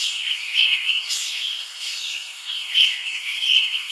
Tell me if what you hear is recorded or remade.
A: remade